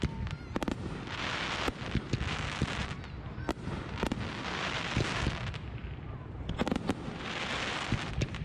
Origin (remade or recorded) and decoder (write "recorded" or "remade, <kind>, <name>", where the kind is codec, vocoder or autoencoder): recorded